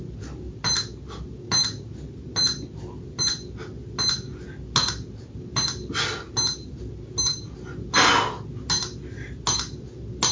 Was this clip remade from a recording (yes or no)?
no